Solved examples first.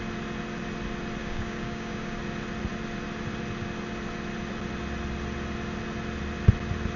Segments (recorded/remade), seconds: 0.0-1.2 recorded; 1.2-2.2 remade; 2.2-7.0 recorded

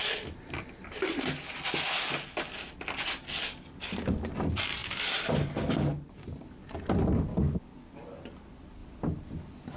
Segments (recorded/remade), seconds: 0.0-3.5 recorded; 3.5-4.3 remade; 4.3-7.3 recorded; 7.3-7.9 remade; 7.9-9.8 recorded

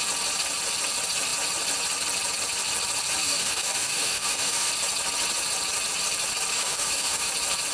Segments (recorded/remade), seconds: 0.0-3.2 recorded; 3.2-4.7 remade; 4.7-6.5 recorded; 6.5-7.3 remade; 7.3-7.7 recorded

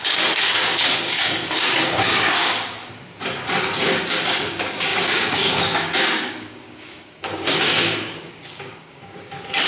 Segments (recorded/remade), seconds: 0.0-2.8 remade; 2.8-3.6 recorded; 3.6-9.7 remade

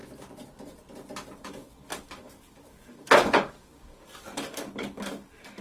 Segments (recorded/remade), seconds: 0.0-1.4 recorded; 1.4-5.6 remade

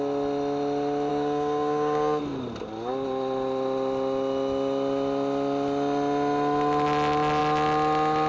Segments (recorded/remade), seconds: 0.0-1.1 recorded; 1.1-2.2 remade; 2.2-8.3 recorded

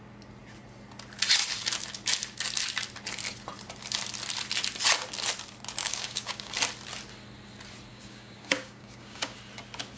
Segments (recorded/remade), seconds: 0.0-5.8 recorded; 5.8-6.5 remade; 6.5-7.9 recorded; 7.9-9.4 remade; 9.4-10.0 recorded

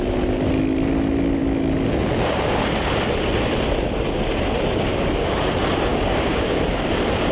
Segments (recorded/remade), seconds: 0.0-4.9 recorded; 4.9-5.5 remade; 5.5-5.9 recorded; 5.9-6.6 remade; 6.6-7.3 recorded